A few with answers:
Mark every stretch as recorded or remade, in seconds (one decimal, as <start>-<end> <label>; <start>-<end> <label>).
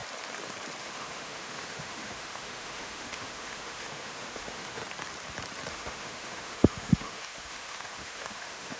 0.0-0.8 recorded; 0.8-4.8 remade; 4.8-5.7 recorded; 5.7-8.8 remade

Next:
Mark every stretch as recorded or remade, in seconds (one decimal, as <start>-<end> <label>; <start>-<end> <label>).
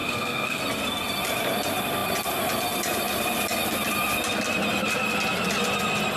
0.0-0.6 remade; 0.6-6.2 recorded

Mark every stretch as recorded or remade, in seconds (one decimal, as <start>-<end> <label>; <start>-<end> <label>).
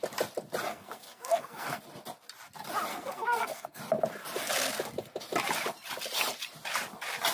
0.0-0.7 recorded; 0.7-1.8 remade; 1.8-2.9 recorded; 2.9-3.8 remade; 3.8-7.3 recorded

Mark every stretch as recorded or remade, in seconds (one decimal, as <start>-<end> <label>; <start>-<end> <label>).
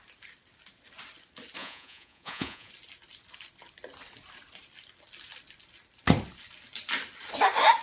0.0-1.6 recorded; 1.6-2.7 remade; 2.7-7.8 recorded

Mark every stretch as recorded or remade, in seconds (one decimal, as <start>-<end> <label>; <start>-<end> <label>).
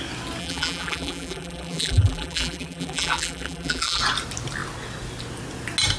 0.0-0.4 recorded; 0.4-4.0 remade; 4.0-6.0 recorded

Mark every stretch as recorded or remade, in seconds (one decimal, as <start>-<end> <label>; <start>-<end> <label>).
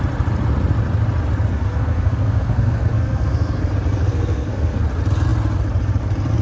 0.0-1.5 recorded; 1.5-3.6 remade; 3.6-4.1 recorded; 4.1-4.8 remade; 4.8-6.4 recorded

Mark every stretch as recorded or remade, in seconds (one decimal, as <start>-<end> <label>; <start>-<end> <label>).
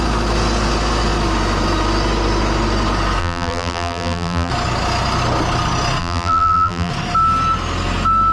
0.0-3.2 recorded; 3.2-4.5 remade; 4.5-6.0 recorded; 6.0-6.9 remade; 6.9-8.3 recorded